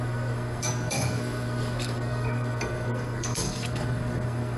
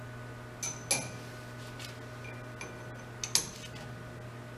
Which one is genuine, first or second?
second